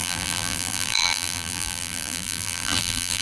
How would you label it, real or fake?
fake